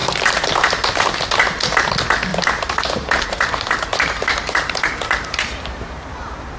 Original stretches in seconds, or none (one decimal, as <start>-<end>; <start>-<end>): 0.0-2.3; 6.1-6.6